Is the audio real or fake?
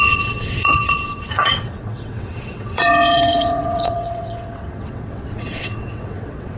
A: fake